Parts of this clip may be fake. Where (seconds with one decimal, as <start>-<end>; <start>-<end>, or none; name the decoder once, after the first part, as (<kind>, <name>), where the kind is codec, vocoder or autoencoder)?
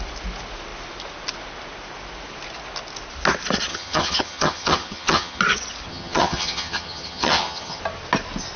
3.7-5.4 (vocoder, HiFi-GAN); 5.9-7.8